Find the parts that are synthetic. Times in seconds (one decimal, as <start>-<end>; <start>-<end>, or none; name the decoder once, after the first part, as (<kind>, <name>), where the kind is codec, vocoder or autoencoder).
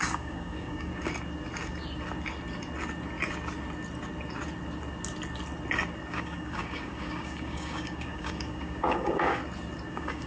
0.0-0.9 (codec, DAC); 6.1-9.4; 9.9-10.3